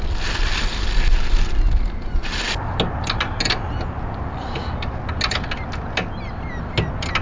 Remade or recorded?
recorded